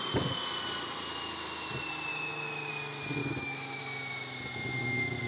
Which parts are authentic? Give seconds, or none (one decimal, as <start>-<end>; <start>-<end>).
0.0-2.1; 2.7-3.2; 3.8-5.3